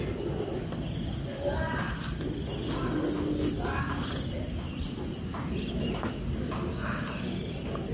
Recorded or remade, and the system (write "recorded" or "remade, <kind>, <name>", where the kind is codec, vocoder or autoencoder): recorded